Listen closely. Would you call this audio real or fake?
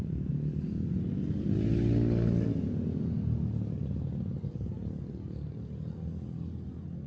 real